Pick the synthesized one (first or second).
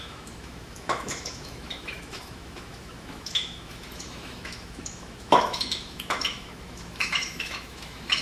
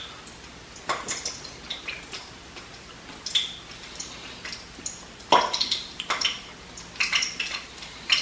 first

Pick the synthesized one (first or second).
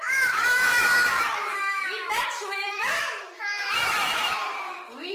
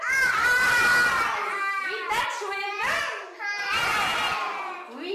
first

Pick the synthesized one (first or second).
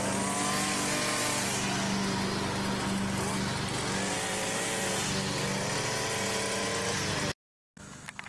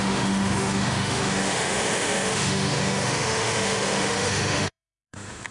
second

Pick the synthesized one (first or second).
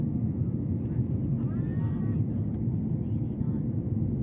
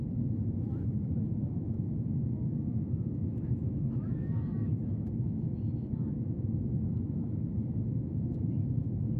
second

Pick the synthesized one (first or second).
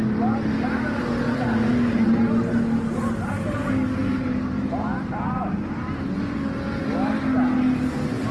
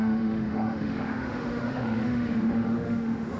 second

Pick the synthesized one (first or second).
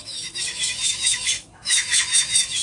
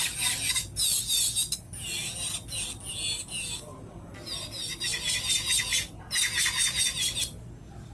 first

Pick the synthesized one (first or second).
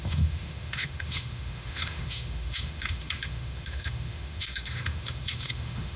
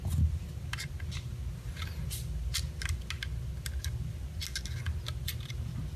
first